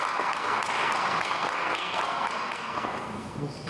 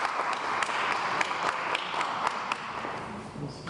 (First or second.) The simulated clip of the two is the first